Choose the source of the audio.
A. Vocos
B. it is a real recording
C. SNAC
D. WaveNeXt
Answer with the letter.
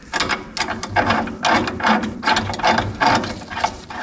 B